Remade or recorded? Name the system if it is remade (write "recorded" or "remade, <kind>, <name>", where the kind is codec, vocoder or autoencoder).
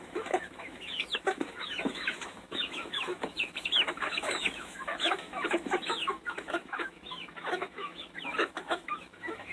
remade, autoencoder, DAC-VAE